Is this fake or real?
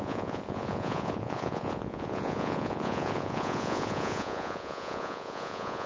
fake